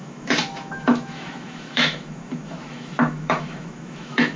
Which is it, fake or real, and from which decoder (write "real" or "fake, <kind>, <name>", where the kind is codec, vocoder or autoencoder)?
fake, autoencoder, DAC-VAE